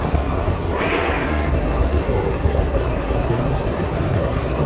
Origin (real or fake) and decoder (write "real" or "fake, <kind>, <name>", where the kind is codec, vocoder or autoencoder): fake, codec, SNAC